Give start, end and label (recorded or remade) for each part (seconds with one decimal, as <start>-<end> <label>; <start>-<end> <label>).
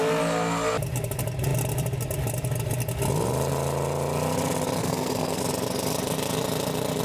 0.0-4.8 recorded; 4.8-5.4 remade; 5.4-7.0 recorded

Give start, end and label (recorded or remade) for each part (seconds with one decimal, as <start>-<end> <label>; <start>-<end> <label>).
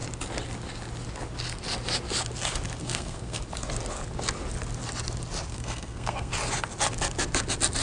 0.0-2.8 recorded; 2.8-3.4 remade; 3.4-5.5 recorded; 5.5-6.3 remade; 6.3-7.8 recorded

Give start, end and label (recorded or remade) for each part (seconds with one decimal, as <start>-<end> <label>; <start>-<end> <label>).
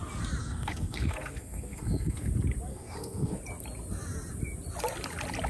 0.0-0.4 recorded; 0.4-2.3 remade; 2.3-2.7 recorded; 2.7-3.4 remade; 3.4-5.5 recorded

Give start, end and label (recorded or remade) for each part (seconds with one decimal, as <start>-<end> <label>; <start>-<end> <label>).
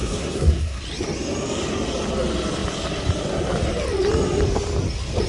0.0-0.8 remade; 0.8-5.3 recorded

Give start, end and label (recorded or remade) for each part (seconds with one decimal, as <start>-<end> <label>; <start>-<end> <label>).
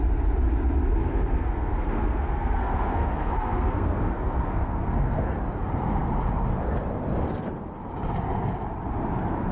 0.0-1.0 recorded; 1.0-5.3 remade; 5.3-9.5 recorded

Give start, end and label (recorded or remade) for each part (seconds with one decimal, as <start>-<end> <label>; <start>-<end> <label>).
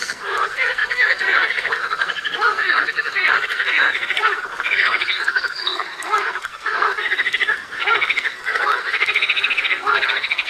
0.0-10.5 remade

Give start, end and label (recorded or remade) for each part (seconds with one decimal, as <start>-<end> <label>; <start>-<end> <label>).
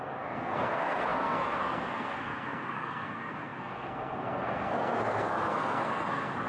0.0-6.5 remade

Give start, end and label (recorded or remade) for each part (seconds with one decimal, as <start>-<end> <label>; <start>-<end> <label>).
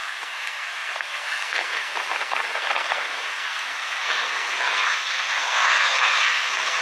0.0-6.8 remade